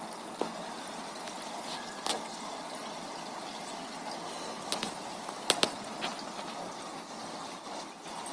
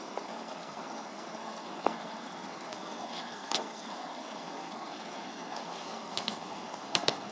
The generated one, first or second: second